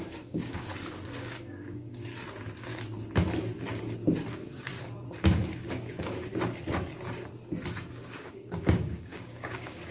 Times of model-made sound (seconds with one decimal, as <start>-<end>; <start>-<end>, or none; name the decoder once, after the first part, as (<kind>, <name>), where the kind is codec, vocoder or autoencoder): 0.0-0.7 (codec, DAC); 1.2-2.1; 4.3-4.7; 5.2-6.3; 7.9-9.9